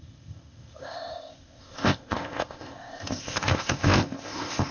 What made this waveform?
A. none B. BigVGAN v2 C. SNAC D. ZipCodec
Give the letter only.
D